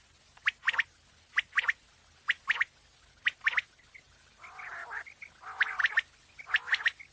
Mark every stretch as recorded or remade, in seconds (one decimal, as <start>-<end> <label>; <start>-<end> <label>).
0.0-7.1 recorded